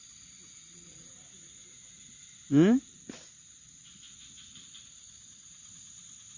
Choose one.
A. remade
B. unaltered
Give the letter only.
A